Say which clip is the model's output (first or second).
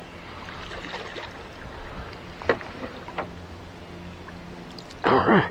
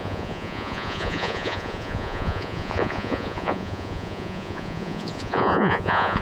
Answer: second